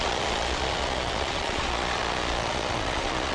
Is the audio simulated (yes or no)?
yes